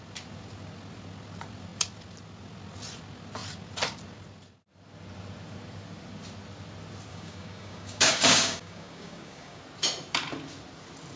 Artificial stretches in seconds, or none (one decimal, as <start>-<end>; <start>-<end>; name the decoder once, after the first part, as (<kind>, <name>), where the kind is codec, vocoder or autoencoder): 7.1-9.6 (codec, DAC)